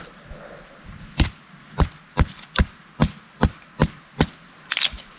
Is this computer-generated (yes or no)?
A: no